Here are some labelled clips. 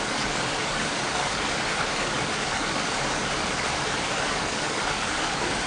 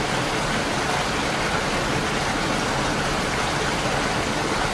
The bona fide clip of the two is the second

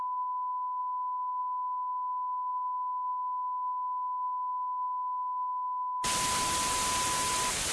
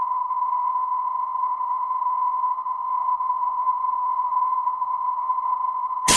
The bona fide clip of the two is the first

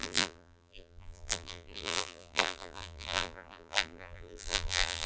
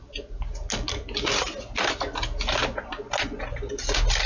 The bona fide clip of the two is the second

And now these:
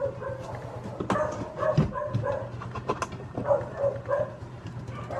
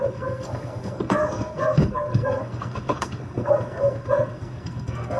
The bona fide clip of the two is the first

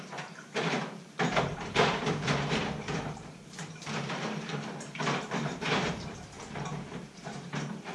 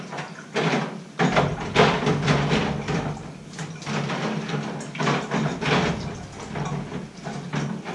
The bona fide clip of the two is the second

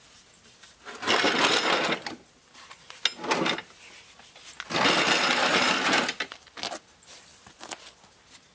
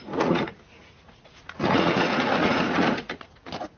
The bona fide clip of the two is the first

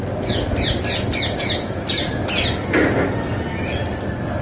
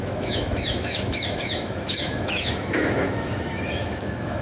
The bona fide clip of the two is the first